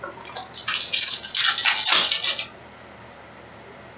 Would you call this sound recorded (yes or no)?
yes